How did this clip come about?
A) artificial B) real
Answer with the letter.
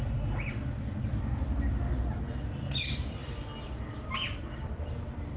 B